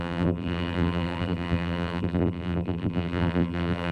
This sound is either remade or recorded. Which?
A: remade